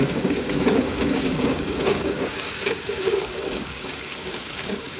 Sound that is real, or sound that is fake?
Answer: fake